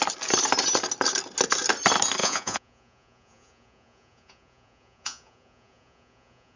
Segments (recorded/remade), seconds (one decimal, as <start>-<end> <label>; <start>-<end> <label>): 0.0-2.2 recorded; 2.2-6.6 remade